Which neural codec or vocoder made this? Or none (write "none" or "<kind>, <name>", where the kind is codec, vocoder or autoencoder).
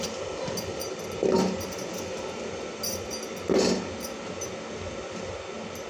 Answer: none